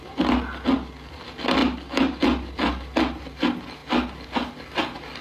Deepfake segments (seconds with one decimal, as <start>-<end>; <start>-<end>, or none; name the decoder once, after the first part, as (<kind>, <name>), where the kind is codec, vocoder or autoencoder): none